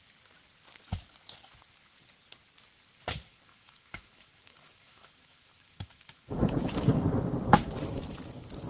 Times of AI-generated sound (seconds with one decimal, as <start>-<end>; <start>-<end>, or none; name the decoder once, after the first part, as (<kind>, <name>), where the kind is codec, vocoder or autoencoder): 3.3-6.5 (autoencoder, DAC-VAE)